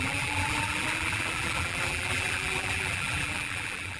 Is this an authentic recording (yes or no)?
no